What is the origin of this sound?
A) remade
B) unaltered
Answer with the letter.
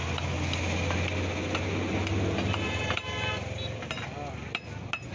B